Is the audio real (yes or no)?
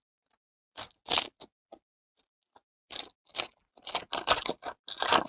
yes